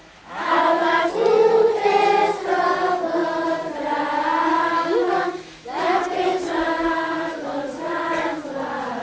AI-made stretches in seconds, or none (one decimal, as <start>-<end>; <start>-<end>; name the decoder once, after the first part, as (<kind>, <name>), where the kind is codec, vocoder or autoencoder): 0.0-1.1 (autoencoder, DAC-VAE); 4.5-8.6